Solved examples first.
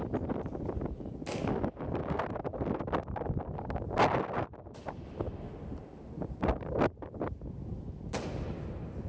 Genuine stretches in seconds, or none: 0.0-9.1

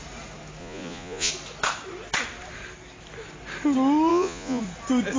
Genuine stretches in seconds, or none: 0.0-0.6; 1.3-4.1; 4.6-5.2

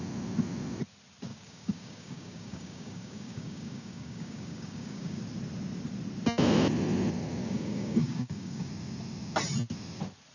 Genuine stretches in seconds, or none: 0.0-1.3; 5.2-7.4; 8.7-10.3

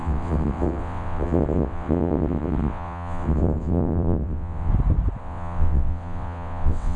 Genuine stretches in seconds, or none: 4.7-5.2

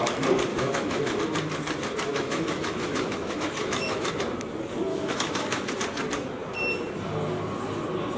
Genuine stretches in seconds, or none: 0.0-0.5; 1.2-2.1; 4.1-4.9; 5.7-8.2